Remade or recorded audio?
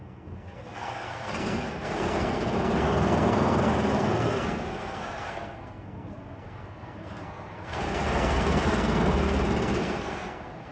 remade